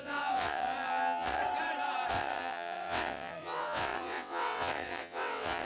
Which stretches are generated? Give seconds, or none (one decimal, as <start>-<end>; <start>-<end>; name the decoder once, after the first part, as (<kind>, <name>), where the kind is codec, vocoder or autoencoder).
0.0-1.4 (vocoder, WaveNeXt); 2.1-5.6